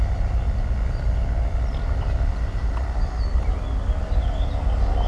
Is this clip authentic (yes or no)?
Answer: yes